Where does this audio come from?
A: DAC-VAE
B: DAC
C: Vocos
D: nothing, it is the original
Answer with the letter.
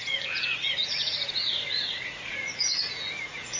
C